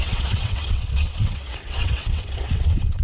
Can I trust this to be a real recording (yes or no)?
no